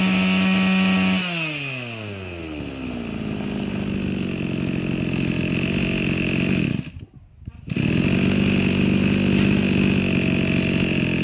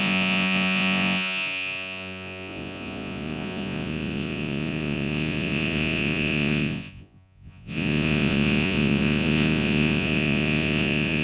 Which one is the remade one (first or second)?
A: second